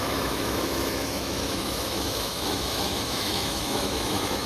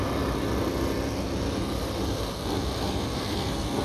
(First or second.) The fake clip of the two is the first